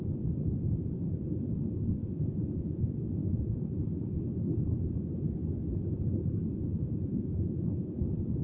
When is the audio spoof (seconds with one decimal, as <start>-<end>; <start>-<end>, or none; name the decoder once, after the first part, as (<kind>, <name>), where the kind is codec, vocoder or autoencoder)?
2.0-2.8 (vocoder, Vocos); 3.2-3.7; 6.7-8.0